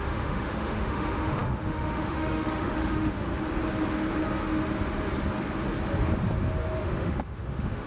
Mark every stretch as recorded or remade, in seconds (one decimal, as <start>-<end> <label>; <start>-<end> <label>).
0.0-3.3 remade; 3.3-6.8 recorded; 6.8-7.9 remade